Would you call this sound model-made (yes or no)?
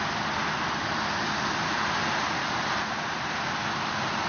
no